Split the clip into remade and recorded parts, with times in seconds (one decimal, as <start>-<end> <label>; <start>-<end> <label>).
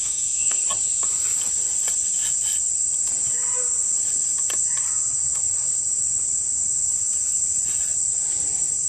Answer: 0.0-0.6 remade; 0.6-8.9 recorded